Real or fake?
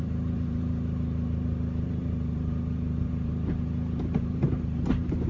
fake